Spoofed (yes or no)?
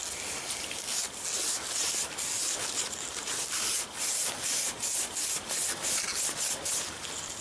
no